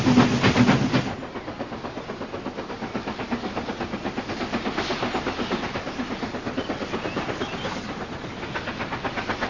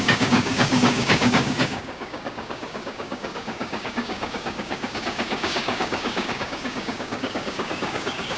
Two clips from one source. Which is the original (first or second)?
first